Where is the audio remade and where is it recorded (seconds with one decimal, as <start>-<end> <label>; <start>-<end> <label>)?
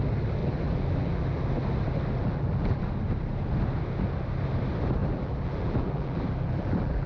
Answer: 0.0-0.4 recorded; 0.4-1.4 remade; 1.4-2.2 recorded; 2.2-2.8 remade; 2.8-5.0 recorded; 5.0-7.1 remade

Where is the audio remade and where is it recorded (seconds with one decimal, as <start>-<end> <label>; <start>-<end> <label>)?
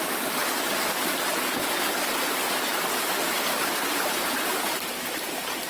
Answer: 0.0-0.4 remade; 0.4-2.6 recorded; 2.6-5.7 remade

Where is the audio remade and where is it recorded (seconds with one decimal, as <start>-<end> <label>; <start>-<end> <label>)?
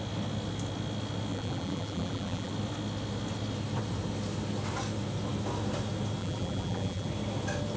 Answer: 0.0-1.3 recorded; 1.3-2.5 remade; 2.5-6.2 recorded; 6.2-7.1 remade; 7.1-7.8 recorded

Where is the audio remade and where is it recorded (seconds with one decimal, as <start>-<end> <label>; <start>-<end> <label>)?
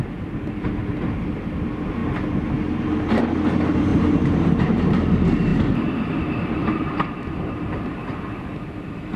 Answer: 0.0-3.9 recorded; 3.9-5.1 remade; 5.1-6.6 recorded; 6.6-8.4 remade; 8.4-9.2 recorded